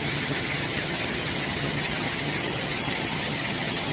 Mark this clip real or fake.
fake